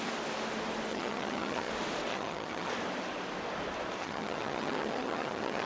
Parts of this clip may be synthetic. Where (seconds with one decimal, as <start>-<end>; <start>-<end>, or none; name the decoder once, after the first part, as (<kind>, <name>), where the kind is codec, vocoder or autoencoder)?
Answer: 0.9-1.7 (vocoder, HiFi-GAN); 2.1-2.7; 4.0-5.7